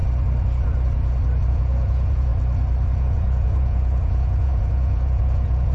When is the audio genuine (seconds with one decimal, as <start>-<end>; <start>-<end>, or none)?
0.0-1.5; 2.3-3.0

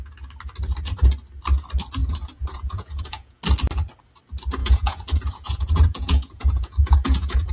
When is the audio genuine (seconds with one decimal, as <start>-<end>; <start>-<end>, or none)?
0.0-2.0; 3.4-4.6

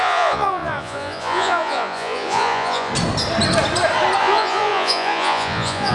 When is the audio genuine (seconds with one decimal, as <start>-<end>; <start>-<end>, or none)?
2.9-4.2

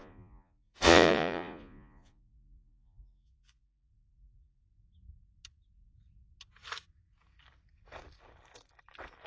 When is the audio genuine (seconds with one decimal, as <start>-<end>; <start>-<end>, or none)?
4.6-9.3

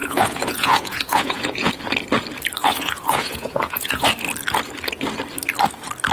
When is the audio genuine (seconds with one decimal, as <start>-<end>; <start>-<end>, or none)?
1.7-2.6; 4.1-6.1

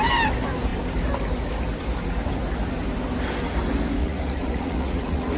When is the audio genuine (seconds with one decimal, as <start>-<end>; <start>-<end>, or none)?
0.0-4.0

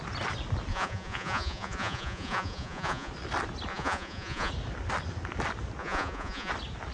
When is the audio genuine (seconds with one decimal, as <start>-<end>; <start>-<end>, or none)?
0.0-0.7; 3.1-3.7; 4.5-5.8; 6.5-6.9

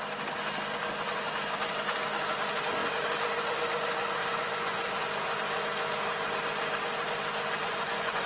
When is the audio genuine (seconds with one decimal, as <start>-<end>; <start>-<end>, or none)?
0.0-4.2; 5.0-7.6